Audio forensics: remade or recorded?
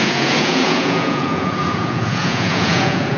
remade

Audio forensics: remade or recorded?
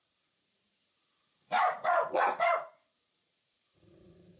remade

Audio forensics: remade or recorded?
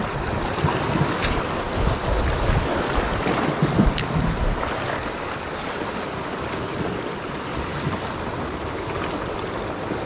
recorded